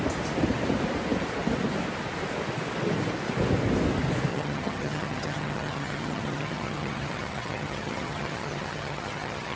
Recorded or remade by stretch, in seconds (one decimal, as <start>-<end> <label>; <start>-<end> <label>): 0.0-4.3 recorded; 4.3-9.6 remade

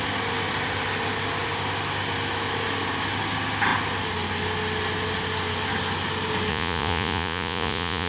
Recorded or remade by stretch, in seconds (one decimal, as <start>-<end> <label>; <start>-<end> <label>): 0.0-6.5 recorded; 6.5-8.1 remade

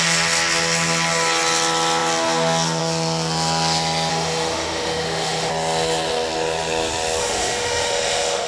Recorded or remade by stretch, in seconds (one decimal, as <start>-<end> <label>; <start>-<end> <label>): 0.0-4.1 recorded; 4.1-5.5 remade; 5.5-7.2 recorded; 7.2-8.5 remade

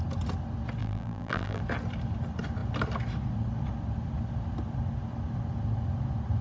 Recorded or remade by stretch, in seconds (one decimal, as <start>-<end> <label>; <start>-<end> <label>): 0.0-0.8 recorded; 0.8-1.6 remade; 1.6-6.4 recorded

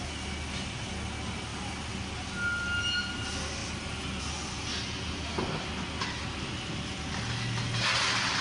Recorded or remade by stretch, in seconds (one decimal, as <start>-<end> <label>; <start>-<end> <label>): 0.0-8.4 recorded

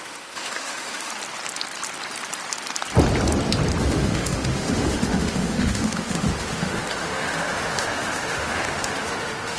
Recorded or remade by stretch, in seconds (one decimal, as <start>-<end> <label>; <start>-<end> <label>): 0.0-1.1 remade; 1.1-3.8 recorded; 3.8-9.6 remade

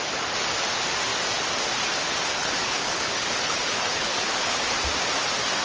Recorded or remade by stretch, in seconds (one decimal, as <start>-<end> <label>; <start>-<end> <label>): 0.0-2.3 recorded; 2.3-4.8 remade; 4.8-5.6 recorded